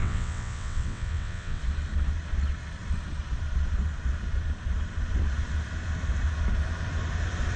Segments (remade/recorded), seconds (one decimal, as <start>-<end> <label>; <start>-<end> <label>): 0.0-1.6 remade; 1.6-7.6 recorded